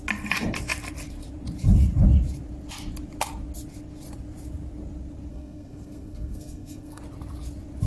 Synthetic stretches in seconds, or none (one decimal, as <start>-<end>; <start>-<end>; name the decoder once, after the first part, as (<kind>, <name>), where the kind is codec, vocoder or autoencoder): 5.3-7.0 (codec, SNAC)